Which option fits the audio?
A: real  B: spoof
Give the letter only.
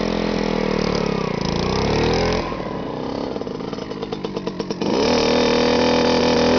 A